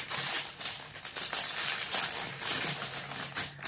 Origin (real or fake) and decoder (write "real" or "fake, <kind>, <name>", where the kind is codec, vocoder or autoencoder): real